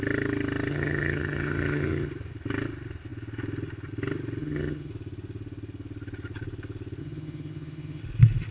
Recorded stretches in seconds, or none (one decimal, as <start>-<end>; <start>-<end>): 0.0-0.7; 2.1-4.4; 4.9-7.0; 8.0-8.5

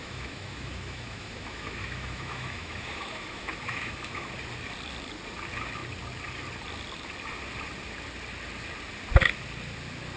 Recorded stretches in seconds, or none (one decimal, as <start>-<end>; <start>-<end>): 4.3-10.2

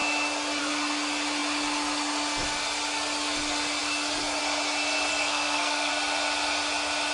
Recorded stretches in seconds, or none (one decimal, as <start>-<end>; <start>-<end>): 0.0-5.1; 5.9-7.1

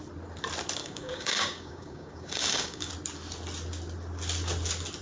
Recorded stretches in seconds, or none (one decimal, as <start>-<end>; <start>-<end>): 0.0-0.8; 2.9-5.0

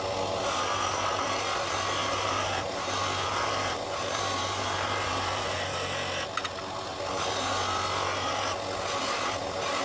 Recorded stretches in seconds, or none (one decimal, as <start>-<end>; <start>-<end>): 0.0-2.0; 5.4-9.8

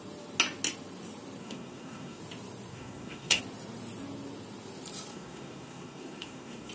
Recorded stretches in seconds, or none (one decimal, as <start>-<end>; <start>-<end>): 0.0-1.4; 2.2-2.7; 3.4-5.1

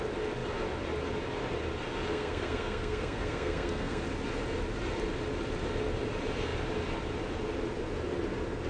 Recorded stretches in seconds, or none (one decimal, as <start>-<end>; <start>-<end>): 0.0-2.1; 4.0-8.7